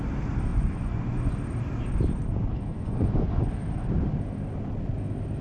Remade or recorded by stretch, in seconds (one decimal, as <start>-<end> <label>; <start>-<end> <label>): 0.0-0.5 recorded; 0.5-1.3 remade; 1.3-2.7 recorded; 2.7-3.5 remade; 3.5-5.4 recorded